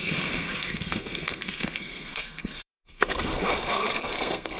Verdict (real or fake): fake